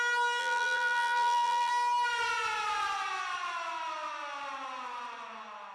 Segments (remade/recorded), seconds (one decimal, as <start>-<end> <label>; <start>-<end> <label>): 0.0-0.4 recorded; 0.4-1.7 remade; 1.7-5.7 recorded